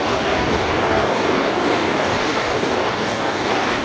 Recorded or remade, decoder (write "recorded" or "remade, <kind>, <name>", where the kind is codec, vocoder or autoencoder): remade, codec, DAC